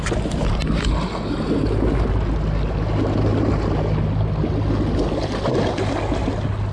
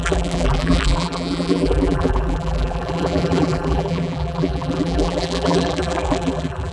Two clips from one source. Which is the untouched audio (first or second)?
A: first